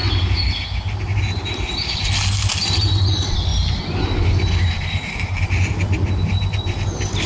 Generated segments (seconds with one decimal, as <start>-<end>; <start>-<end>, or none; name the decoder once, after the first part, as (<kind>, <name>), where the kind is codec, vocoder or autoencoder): none